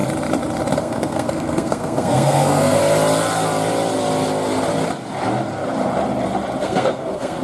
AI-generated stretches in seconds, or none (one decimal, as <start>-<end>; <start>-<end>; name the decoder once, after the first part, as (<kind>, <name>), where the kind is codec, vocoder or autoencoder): 0.8-2.8 (codec, SNAC); 6.6-7.4